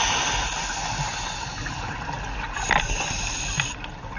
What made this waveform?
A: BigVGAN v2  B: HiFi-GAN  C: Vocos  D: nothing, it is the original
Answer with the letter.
D